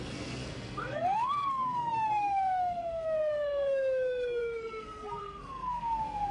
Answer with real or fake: fake